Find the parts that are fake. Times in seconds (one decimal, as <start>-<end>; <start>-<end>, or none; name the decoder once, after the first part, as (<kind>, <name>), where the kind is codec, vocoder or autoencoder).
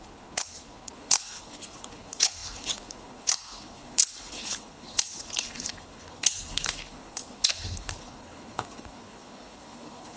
0.0-10.2 (codec, HILCodec)